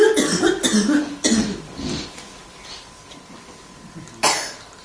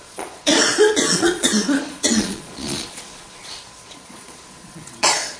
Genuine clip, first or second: first